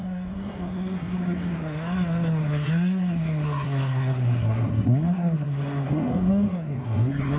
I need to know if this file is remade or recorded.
remade